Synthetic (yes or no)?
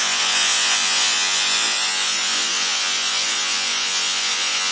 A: yes